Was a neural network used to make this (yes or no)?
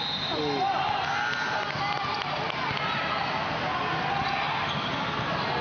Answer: no